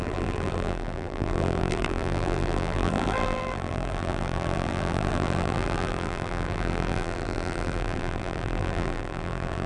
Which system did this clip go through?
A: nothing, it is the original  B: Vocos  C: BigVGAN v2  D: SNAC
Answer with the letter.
C